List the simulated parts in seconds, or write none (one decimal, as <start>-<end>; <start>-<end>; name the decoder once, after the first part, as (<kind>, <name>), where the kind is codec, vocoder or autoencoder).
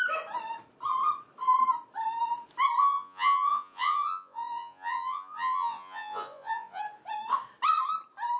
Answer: 2.8-6.8 (vocoder, Vocos)